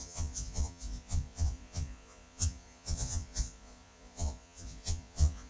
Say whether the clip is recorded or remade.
remade